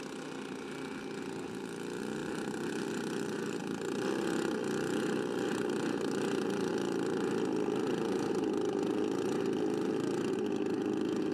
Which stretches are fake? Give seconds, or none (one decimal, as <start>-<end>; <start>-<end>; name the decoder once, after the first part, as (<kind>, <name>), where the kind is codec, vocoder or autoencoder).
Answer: 2.2-2.7 (vocoder, BigVGAN v2)